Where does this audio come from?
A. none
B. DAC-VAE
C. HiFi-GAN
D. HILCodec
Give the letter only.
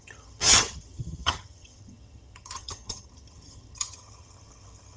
C